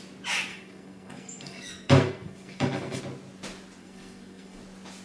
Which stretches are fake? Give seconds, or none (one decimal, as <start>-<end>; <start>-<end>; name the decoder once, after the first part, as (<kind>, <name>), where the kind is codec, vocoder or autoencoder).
0.5-3.0 (codec, SNAC); 3.8-4.6